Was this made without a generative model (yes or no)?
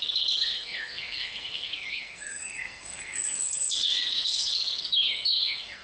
no